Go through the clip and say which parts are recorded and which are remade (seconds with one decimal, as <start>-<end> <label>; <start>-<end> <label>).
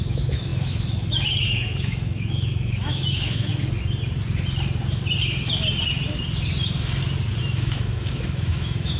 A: 0.0-3.5 remade; 3.5-7.4 recorded; 7.4-9.0 remade